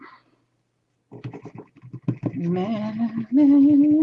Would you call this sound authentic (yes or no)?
yes